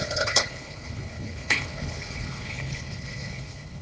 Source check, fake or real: fake